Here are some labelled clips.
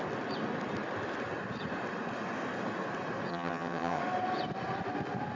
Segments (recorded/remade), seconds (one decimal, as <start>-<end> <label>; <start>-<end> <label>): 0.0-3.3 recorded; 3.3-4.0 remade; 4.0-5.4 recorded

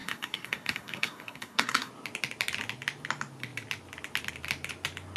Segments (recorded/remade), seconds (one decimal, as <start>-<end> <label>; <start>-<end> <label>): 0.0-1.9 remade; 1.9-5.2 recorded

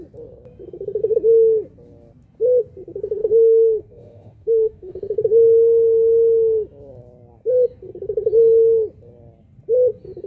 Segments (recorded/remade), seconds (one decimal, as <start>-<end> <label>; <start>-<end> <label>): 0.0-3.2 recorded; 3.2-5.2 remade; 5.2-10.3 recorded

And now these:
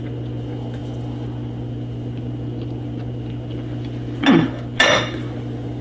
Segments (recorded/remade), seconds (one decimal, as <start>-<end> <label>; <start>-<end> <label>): 0.0-5.8 recorded

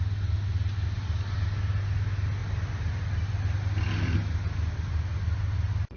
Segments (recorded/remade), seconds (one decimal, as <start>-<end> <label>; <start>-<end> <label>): 0.0-6.0 recorded

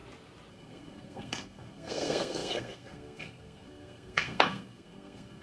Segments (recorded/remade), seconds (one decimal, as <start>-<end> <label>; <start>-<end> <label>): 0.0-0.5 recorded; 0.5-5.4 remade